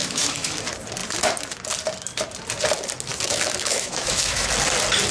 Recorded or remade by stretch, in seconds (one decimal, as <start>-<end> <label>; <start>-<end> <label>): 0.0-0.5 remade; 0.5-3.1 recorded; 3.1-4.5 remade; 4.5-5.1 recorded